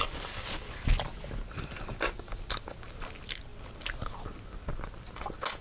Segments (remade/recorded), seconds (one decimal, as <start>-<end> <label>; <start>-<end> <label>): 0.0-5.6 recorded